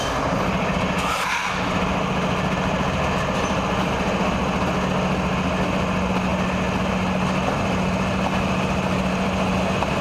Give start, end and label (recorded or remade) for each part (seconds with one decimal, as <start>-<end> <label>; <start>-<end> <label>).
0.0-10.0 recorded

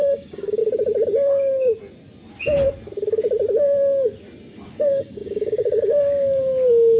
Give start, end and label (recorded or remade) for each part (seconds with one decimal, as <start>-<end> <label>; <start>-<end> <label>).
0.0-0.6 remade; 0.6-4.8 recorded; 4.8-7.0 remade

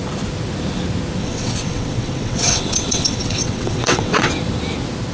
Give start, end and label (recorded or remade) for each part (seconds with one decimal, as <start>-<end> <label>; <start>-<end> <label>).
0.0-1.2 recorded; 1.2-4.3 remade; 4.3-5.1 recorded

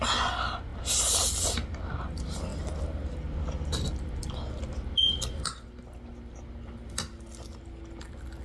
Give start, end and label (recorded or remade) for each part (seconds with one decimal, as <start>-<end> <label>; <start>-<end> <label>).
0.0-8.4 recorded

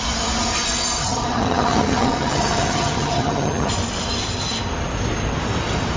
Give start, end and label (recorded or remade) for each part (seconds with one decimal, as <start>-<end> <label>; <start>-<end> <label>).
0.0-1.0 recorded; 1.0-3.7 remade; 3.7-6.0 recorded

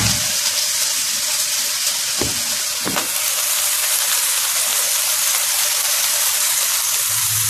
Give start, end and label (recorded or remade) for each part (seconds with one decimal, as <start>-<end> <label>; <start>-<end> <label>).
0.0-7.5 recorded

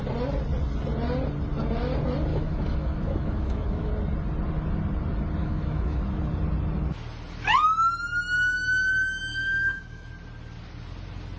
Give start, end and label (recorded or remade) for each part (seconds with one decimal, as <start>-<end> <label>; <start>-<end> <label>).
0.0-2.3 recorded; 2.3-3.9 remade; 3.9-5.4 recorded; 5.4-6.0 remade; 6.0-9.3 recorded; 9.3-10.1 remade; 10.1-11.4 recorded